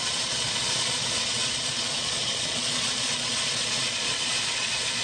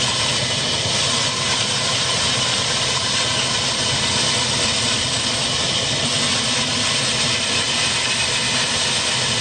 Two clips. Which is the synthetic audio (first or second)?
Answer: first